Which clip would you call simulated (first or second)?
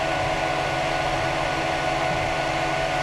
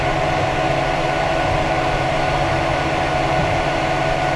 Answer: second